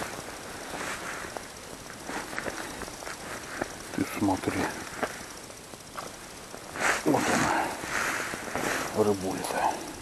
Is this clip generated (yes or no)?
no